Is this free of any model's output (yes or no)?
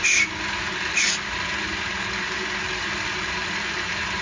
yes